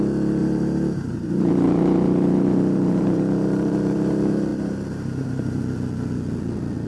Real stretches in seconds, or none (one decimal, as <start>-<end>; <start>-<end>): 0.0-0.4; 4.1-4.5; 5.6-6.9